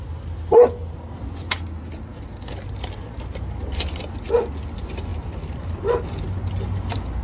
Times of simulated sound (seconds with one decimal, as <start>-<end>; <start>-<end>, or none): none